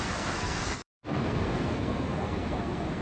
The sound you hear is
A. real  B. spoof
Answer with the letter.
B